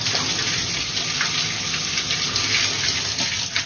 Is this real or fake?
real